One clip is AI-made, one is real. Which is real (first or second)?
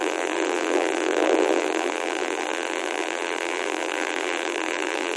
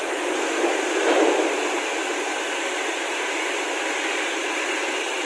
second